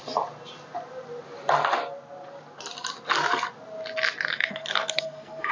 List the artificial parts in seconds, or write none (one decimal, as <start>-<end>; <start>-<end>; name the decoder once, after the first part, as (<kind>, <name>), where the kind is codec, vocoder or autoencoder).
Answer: 4.3-5.5 (codec, SNAC)

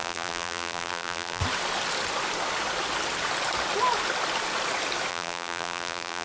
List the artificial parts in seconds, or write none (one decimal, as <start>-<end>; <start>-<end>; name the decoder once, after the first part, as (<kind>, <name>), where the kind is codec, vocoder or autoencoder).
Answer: 0.0-1.4 (vocoder, BigVGAN v2); 5.1-6.2

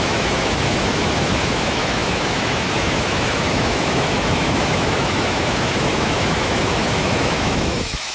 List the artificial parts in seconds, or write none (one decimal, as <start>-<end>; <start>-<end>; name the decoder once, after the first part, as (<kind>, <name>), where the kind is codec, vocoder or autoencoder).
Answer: 0.0-8.1 (autoencoder, DAC-VAE)

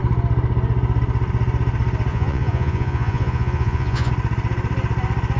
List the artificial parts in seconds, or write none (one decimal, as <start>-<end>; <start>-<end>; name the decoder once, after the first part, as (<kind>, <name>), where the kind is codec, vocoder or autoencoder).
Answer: 2.1-4.1 (vocoder, Vocos)

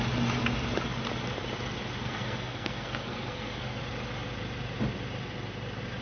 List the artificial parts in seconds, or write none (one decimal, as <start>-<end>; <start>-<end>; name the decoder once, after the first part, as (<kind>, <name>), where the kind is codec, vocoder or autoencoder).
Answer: 2.0-3.8 (codec, SNAC)